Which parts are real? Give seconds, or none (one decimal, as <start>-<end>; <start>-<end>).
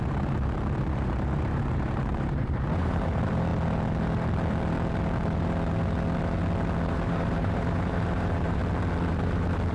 3.5-6.9; 8.6-9.1